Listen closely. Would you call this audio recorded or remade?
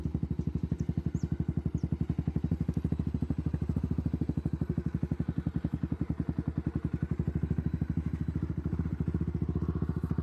recorded